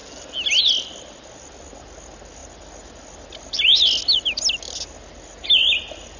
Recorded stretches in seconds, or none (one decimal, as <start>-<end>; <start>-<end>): 0.0-6.2